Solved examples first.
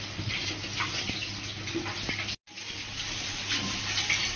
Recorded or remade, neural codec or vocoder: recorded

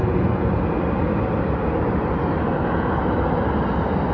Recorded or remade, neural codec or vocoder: recorded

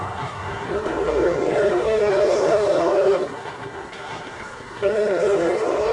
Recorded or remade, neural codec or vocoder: remade, codec, SNAC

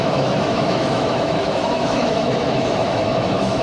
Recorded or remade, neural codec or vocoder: remade, autoencoder, DAC-VAE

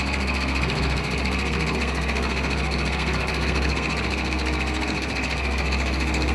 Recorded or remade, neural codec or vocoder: remade, codec, SNAC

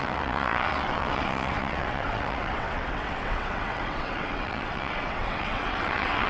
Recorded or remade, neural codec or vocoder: remade, vocoder, WaveNeXt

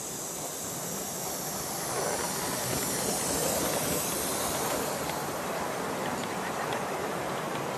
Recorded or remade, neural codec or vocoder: recorded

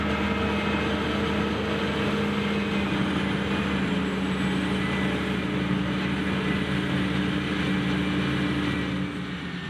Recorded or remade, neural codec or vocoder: recorded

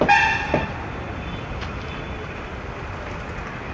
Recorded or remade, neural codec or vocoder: recorded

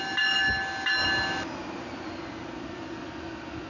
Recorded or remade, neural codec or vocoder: recorded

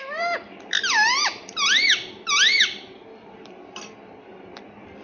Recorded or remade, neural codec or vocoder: remade, vocoder, BigVGAN v2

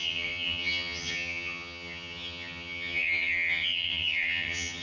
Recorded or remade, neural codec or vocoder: remade, vocoder, HiFi-GAN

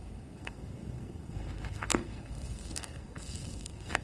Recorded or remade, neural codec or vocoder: remade, codec, SNAC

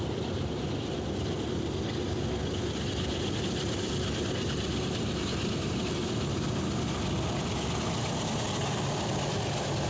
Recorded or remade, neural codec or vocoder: recorded